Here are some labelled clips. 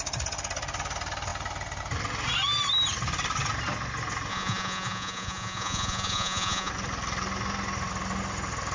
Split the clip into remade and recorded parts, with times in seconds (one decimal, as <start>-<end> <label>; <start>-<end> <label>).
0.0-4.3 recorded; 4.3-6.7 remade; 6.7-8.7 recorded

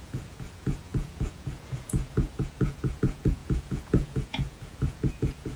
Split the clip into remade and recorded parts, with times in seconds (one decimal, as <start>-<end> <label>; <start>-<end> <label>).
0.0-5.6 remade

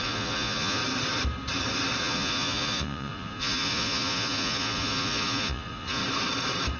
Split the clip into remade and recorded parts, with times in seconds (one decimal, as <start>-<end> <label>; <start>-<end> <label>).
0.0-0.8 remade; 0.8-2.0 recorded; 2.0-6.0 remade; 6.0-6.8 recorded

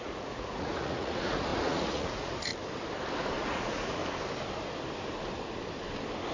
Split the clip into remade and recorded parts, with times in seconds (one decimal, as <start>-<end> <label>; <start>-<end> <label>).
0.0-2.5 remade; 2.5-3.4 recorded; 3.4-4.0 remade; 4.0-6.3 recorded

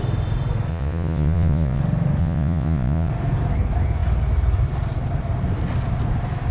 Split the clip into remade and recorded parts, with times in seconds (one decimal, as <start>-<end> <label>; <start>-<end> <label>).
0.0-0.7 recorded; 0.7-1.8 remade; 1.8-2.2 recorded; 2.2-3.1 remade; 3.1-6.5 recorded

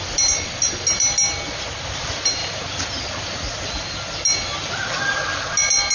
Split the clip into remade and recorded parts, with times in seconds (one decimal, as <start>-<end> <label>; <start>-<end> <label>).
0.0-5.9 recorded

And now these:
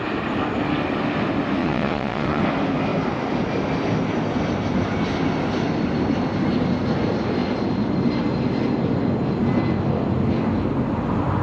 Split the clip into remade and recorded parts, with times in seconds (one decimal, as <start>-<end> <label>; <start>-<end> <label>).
0.0-1.6 recorded; 1.6-2.4 remade; 2.4-11.4 recorded